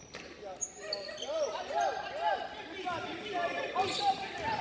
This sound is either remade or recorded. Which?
recorded